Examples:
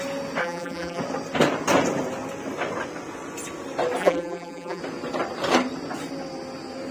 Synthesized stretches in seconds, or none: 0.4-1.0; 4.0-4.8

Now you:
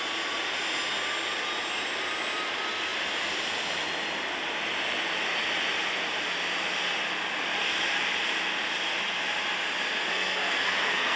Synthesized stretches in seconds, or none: 10.1-11.2

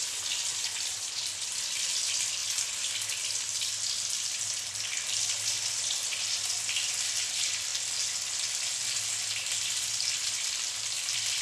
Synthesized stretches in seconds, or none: 0.0-2.4; 4.1-7.7; 10.3-11.4

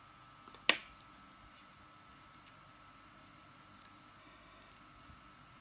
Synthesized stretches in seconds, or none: 4.2-4.7